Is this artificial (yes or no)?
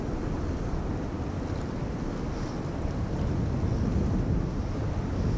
no